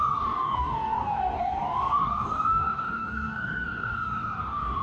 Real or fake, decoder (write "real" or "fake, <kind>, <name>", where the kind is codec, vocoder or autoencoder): fake, codec, DAC